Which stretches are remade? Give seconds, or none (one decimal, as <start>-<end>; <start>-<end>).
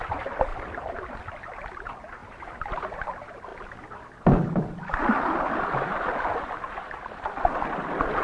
0.5-1.2; 2.2-2.7; 3.5-5.2